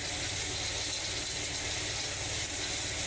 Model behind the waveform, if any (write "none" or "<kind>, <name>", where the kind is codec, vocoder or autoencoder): none